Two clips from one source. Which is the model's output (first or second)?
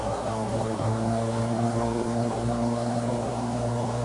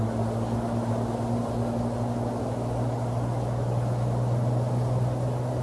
first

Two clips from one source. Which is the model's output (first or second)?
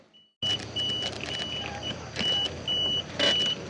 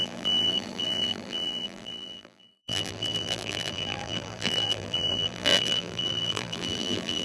second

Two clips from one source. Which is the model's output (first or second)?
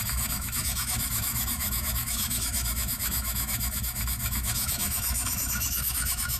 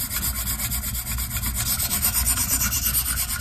first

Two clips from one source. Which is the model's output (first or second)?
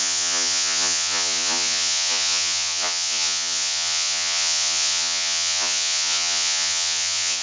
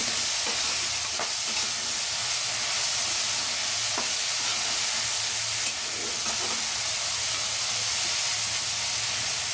first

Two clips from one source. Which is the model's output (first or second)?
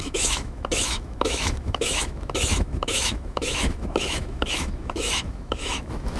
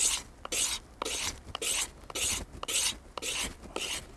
first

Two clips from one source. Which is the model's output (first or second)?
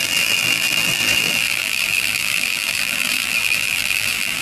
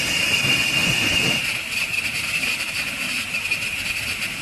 first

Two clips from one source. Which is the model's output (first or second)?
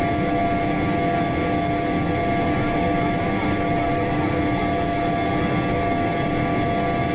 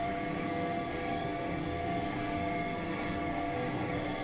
second